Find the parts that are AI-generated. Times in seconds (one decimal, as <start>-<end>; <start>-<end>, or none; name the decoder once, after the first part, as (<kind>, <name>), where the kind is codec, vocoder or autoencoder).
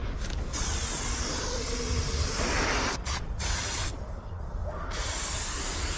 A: 3.0-4.6 (vocoder, Vocos)